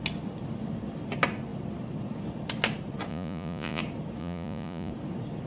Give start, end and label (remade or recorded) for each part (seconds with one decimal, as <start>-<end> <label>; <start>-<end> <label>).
0.0-3.1 recorded; 3.1-3.8 remade; 3.8-4.2 recorded; 4.2-4.9 remade; 4.9-5.5 recorded

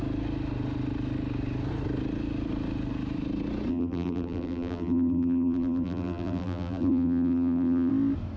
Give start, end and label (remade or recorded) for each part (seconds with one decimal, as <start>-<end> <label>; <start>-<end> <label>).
0.0-3.7 recorded; 3.7-7.9 remade; 7.9-8.4 recorded

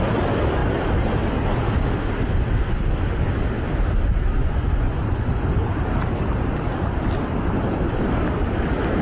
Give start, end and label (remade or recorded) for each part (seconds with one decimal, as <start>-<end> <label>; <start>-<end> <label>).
0.0-4.4 recorded; 4.4-5.3 remade; 5.3-9.0 recorded

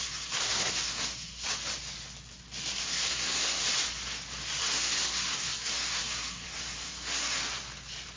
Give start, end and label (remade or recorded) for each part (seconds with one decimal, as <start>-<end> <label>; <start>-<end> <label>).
0.0-1.5 remade; 1.5-2.8 recorded; 2.8-3.6 remade; 3.6-4.6 recorded; 4.6-7.4 remade; 7.4-8.2 recorded

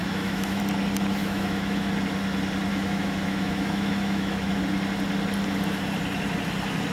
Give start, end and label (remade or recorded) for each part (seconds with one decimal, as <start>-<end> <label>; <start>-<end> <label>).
0.0-0.6 remade; 0.6-1.2 recorded; 1.2-1.9 remade; 1.9-2.7 recorded; 2.7-4.6 remade; 4.6-6.9 recorded

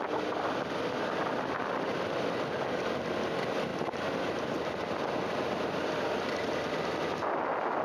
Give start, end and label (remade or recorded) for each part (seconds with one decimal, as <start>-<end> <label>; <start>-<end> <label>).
0.0-7.8 recorded

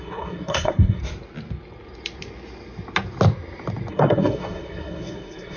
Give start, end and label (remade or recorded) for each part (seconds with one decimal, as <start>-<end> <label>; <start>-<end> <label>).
0.0-1.0 remade; 1.0-3.9 recorded; 3.9-5.6 remade